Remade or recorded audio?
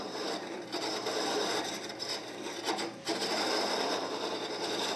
remade